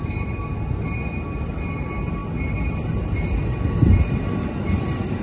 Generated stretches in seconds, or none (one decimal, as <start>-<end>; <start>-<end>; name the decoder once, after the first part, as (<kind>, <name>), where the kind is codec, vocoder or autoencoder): none